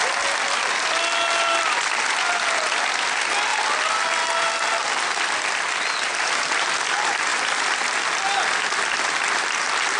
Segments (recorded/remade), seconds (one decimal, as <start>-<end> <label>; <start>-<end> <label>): 0.0-10.0 recorded